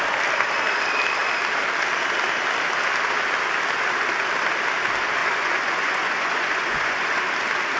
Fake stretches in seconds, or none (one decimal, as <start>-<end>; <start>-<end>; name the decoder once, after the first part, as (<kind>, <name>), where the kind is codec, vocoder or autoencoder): 5.2-7.2 (vocoder, Vocos)